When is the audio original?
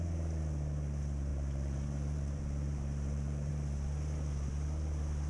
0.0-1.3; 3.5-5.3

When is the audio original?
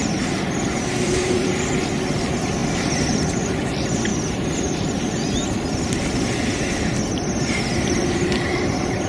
4.1-7.4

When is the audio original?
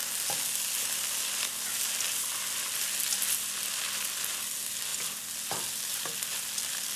0.0-7.0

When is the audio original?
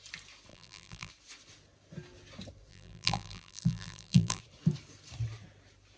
0.0-0.5; 1.1-2.7; 4.4-6.0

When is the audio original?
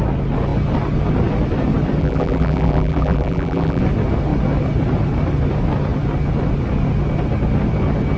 0.0-2.0; 3.8-8.2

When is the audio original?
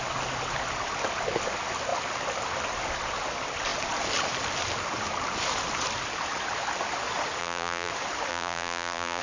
0.0-7.4; 7.9-8.3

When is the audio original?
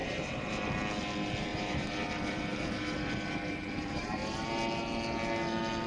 0.7-1.5; 4.5-5.9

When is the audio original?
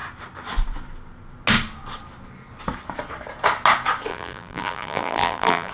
0.0-4.1